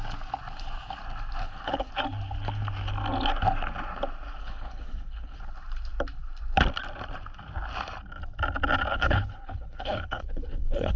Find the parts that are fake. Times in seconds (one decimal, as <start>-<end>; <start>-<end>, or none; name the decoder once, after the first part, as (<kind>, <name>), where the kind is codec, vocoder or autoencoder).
1.4-1.9 (codec, HILCodec); 4.4-5.4; 8.9-11.0